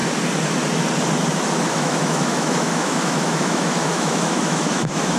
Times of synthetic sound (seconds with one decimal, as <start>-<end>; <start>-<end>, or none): 1.7-5.2